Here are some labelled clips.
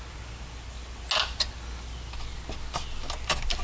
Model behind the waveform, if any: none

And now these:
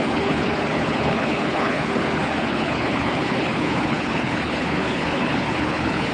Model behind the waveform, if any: codec, HILCodec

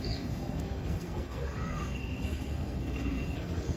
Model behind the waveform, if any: codec, SNAC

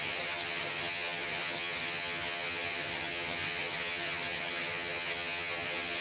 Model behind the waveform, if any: vocoder, HiFi-GAN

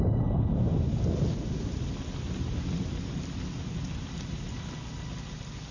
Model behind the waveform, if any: none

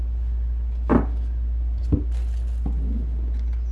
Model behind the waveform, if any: none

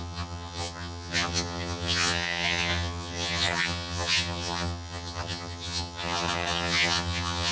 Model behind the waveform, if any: vocoder, HiFi-GAN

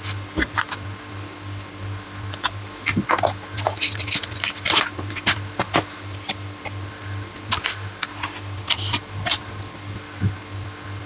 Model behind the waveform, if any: none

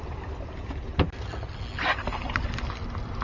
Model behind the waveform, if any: none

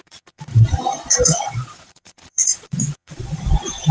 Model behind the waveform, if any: vocoder, Vocos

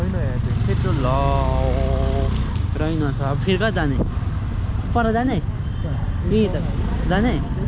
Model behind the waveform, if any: none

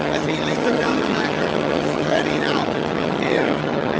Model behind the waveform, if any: vocoder, HiFi-GAN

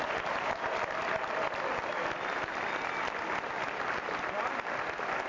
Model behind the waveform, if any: none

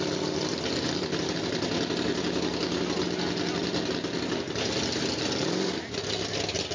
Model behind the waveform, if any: none